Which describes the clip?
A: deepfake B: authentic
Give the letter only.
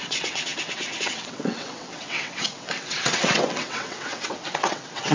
A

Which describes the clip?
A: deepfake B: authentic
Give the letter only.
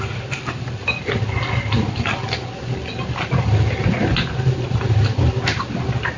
B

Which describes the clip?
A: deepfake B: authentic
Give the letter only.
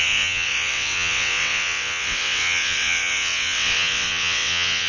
A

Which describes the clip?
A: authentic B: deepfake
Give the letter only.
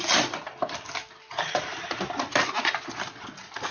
A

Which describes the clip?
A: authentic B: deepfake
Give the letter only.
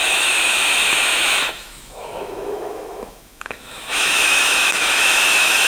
B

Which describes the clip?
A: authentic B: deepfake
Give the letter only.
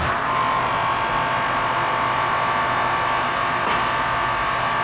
A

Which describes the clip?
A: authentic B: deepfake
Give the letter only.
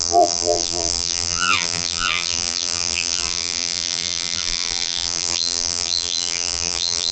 B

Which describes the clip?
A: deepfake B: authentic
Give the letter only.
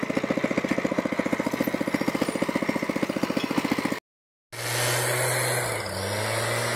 B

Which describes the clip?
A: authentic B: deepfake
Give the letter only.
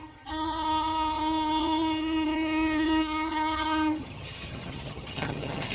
B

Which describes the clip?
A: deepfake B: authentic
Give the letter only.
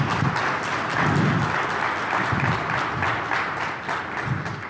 B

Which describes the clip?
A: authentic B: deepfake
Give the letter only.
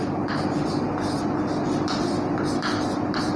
A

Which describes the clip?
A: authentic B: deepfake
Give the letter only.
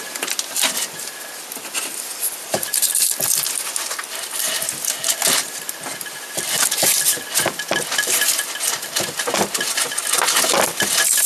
A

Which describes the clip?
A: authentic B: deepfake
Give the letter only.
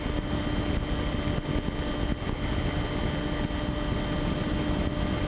A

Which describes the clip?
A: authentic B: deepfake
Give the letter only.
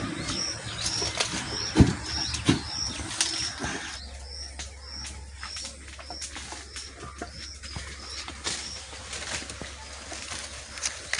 A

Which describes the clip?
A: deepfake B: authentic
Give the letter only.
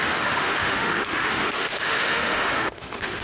A